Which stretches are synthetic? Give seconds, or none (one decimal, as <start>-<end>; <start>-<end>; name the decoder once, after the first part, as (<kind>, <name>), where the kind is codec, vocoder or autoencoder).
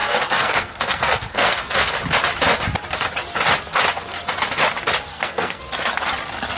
0.0-1.9 (codec, SNAC); 5.1-5.6